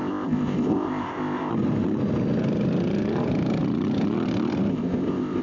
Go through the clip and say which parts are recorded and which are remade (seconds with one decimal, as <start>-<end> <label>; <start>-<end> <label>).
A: 0.0-1.5 remade; 1.5-4.7 recorded; 4.7-5.4 remade